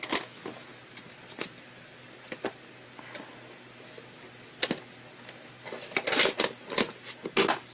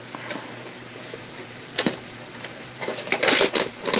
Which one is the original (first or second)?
first